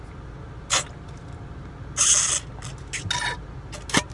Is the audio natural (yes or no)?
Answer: yes